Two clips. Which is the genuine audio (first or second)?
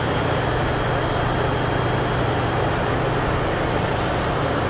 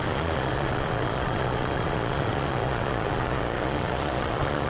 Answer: first